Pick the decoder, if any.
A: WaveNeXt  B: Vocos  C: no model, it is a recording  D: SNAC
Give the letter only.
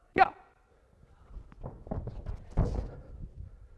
C